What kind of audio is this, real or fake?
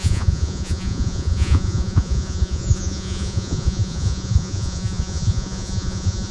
fake